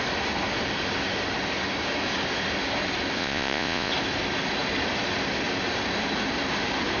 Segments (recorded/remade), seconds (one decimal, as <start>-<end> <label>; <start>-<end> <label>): 0.0-3.2 recorded; 3.2-3.9 remade; 3.9-7.0 recorded